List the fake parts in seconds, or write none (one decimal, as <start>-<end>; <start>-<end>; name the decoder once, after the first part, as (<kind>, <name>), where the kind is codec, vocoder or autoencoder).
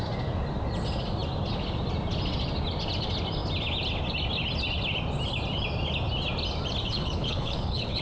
6.8-8.0 (codec, HILCodec)